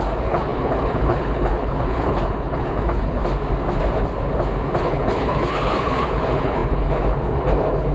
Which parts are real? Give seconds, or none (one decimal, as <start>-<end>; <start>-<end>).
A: 3.2-4.8